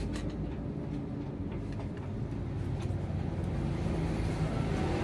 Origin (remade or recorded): recorded